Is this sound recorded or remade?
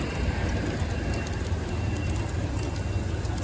recorded